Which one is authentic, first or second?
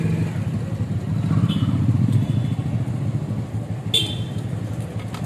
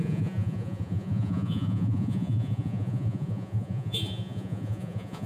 first